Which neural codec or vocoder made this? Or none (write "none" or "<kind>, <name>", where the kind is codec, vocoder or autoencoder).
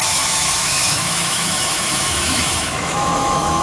autoencoder, DAC-VAE